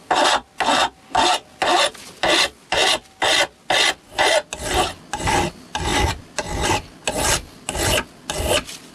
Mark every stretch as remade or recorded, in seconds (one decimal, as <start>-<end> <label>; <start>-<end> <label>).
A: 0.0-8.9 recorded